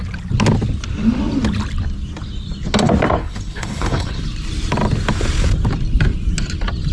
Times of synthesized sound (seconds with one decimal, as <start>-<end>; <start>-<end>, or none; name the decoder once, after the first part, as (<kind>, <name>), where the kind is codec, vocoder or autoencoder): 3.2-4.2 (codec, HILCodec)